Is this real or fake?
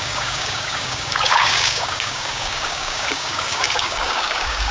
fake